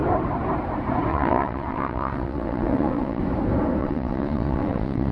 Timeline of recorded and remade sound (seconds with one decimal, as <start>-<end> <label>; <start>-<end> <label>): 0.0-1.1 recorded; 1.1-3.2 remade; 3.2-3.8 recorded; 3.8-5.1 remade